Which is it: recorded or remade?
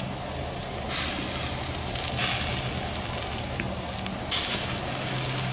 recorded